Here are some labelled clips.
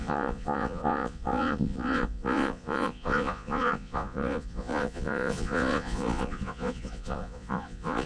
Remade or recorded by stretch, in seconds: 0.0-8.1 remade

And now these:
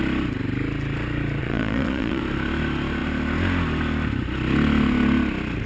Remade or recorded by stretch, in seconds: 0.0-1.4 recorded; 1.4-2.2 remade; 2.2-5.7 recorded

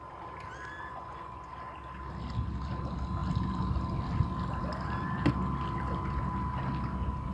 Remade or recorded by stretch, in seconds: 0.0-0.9 recorded; 0.9-1.5 remade; 1.5-7.3 recorded

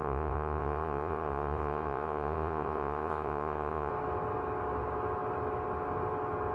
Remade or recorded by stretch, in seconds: 0.0-3.9 remade; 3.9-6.5 recorded

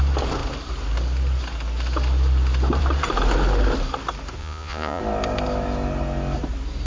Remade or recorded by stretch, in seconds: 0.0-4.4 recorded; 4.4-5.0 remade; 5.0-6.9 recorded

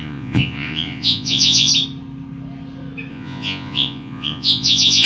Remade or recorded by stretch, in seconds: 0.0-1.7 remade; 1.7-3.1 recorded; 3.1-5.1 remade

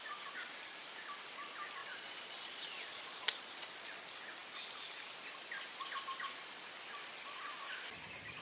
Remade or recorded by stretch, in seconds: 0.0-1.8 recorded; 1.8-4.0 remade; 4.0-8.4 recorded

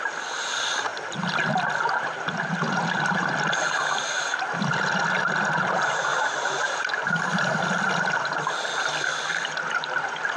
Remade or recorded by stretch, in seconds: 0.0-10.4 recorded